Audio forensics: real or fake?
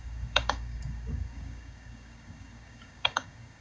fake